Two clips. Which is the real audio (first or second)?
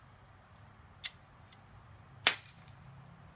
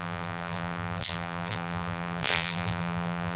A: first